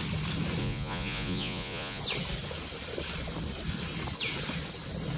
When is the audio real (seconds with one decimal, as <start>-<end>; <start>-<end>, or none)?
0.0-0.6; 2.0-5.2